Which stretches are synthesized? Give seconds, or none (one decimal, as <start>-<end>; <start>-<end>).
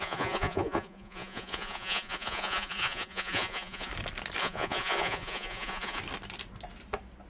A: 0.0-3.9; 4.4-6.0